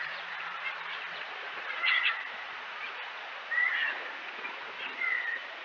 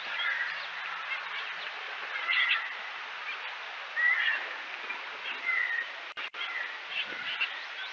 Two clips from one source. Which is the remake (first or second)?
first